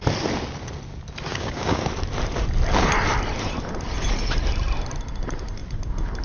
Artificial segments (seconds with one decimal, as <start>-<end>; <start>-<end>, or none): 1.3-1.8